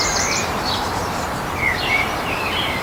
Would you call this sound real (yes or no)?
no